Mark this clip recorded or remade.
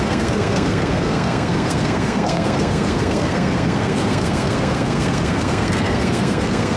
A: remade